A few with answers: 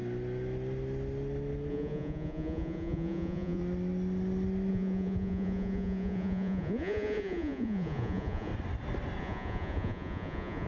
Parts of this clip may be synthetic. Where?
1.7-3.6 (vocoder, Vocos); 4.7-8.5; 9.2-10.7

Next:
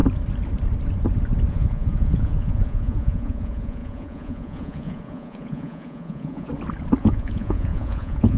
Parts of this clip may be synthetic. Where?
1.5-6.5 (vocoder, Vocos); 7.0-8.4

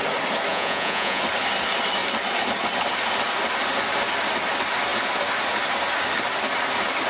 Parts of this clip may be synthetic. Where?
0.5-1.2 (vocoder, Vocos)

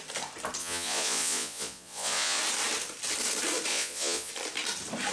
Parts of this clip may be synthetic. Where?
0.6-2.4 (vocoder, Vocos); 3.7-4.3